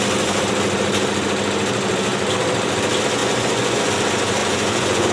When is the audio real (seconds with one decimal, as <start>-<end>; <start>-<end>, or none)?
0.0-3.2; 3.9-4.4